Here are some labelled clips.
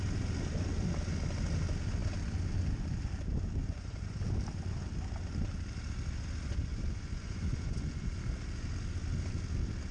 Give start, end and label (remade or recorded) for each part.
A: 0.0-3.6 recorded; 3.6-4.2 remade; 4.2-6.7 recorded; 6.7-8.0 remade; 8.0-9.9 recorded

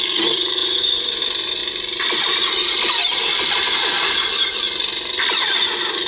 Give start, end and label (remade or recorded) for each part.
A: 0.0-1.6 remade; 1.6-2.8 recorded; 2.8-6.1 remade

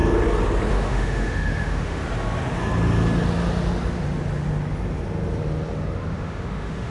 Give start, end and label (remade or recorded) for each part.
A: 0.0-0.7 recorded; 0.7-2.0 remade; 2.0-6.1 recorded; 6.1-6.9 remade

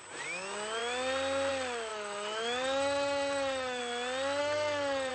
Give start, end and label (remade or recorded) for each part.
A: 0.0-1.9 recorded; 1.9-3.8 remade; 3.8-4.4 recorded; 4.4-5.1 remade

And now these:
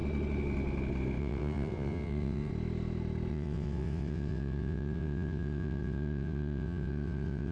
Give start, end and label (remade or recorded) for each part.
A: 0.0-1.2 recorded; 1.2-2.5 remade; 2.5-3.3 recorded; 3.3-7.5 remade